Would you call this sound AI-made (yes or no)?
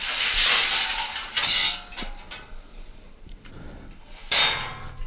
no